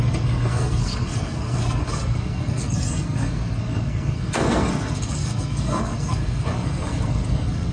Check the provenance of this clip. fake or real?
fake